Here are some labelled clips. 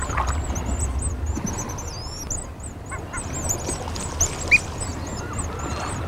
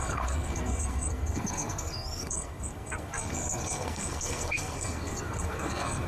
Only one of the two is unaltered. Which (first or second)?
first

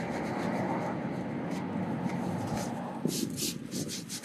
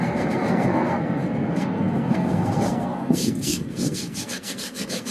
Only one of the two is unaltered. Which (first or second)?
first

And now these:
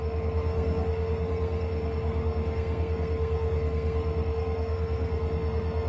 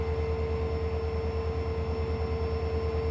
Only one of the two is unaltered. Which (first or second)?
second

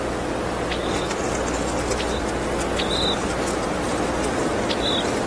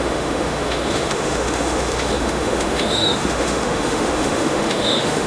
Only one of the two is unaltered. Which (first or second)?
first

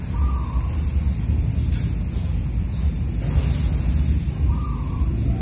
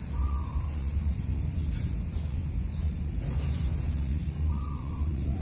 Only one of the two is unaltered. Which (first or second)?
first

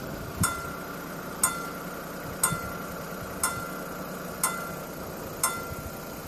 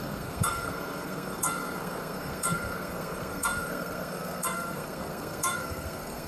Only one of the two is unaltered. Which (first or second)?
first